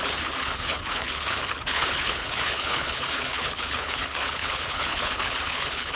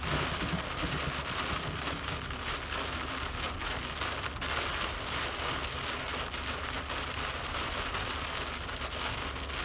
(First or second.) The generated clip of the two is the first